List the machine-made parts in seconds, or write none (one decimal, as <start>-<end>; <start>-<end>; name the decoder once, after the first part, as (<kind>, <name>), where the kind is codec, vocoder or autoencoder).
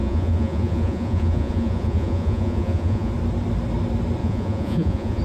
0.0-3.1 (vocoder, Vocos); 4.2-5.2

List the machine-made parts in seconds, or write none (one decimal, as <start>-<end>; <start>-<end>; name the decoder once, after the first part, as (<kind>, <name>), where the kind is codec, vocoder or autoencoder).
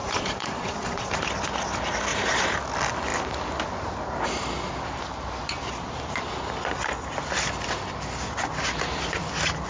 0.0-1.1 (vocoder, Vocos)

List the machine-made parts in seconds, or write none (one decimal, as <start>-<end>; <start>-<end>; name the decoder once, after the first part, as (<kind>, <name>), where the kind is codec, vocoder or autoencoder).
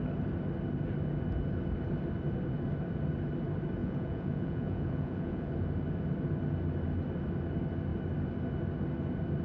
3.8-5.5 (vocoder, Vocos)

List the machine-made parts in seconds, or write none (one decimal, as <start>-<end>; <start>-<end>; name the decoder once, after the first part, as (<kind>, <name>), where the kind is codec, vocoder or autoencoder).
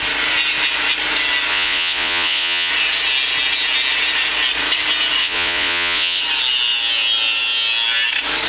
1.5-2.7 (vocoder, Vocos); 5.2-6.2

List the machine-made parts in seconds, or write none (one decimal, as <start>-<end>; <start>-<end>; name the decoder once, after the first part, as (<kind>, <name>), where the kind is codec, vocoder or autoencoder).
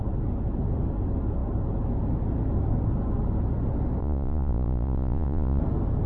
4.0-5.6 (vocoder, Vocos)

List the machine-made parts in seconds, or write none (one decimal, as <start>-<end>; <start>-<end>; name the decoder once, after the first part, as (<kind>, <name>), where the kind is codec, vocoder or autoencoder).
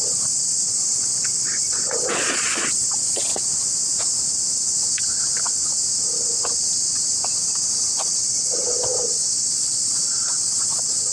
0.0-3.3 (vocoder, Vocos); 8.1-11.1